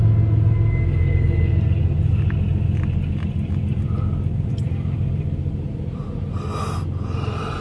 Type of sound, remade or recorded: recorded